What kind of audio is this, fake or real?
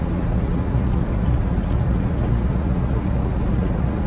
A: fake